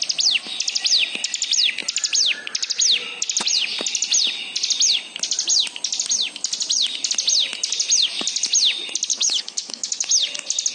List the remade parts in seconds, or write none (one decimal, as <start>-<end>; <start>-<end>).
9.1-10.1